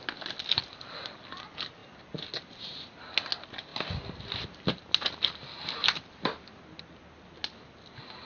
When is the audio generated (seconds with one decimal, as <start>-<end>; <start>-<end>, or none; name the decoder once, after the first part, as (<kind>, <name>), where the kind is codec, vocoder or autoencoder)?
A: none